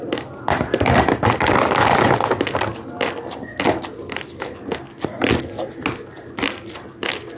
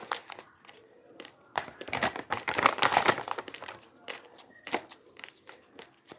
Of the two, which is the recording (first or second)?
first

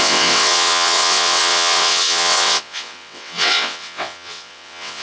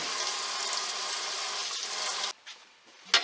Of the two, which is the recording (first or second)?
second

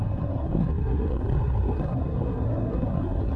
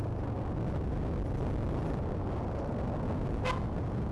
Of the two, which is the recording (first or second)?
second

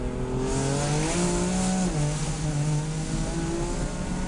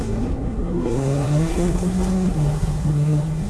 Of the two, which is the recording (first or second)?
first